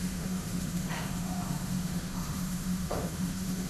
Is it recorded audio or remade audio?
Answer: remade